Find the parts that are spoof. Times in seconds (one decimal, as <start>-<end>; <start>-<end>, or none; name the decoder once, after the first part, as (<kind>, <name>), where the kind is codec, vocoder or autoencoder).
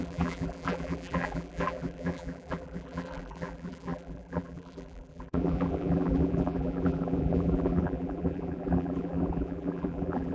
0.0-10.3 (vocoder, BigVGAN v2)